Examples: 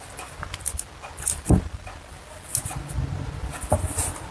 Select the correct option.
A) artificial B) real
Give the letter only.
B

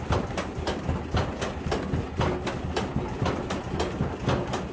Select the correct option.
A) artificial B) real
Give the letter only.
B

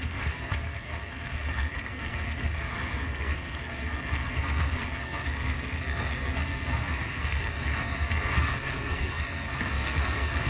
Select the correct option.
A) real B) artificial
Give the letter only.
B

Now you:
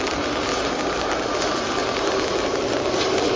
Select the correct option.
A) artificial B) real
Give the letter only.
B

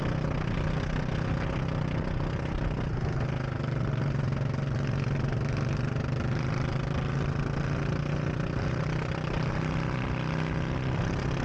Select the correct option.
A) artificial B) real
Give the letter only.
B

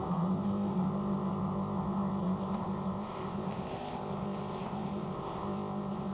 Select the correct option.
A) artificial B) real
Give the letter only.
A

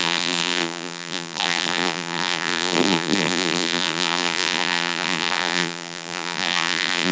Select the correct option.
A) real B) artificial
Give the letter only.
B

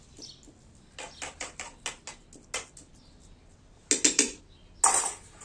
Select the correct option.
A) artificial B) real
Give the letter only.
B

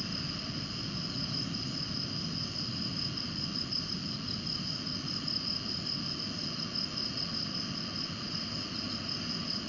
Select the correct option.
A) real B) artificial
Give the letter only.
A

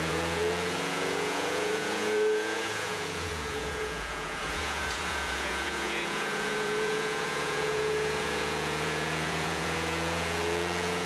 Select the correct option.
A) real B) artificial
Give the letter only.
B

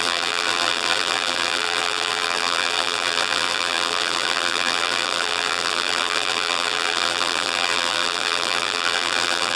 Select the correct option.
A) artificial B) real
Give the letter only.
A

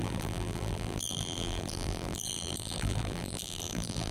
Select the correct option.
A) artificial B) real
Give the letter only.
A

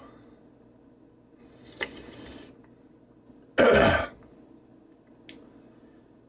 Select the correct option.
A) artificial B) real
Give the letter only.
B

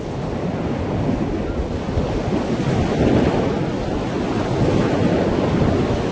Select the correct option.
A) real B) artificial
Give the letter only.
A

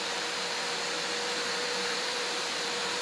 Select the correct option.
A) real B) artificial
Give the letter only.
B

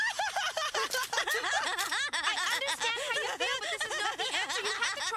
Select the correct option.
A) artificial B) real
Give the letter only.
B